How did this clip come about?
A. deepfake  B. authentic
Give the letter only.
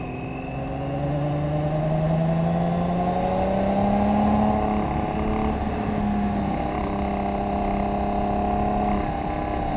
B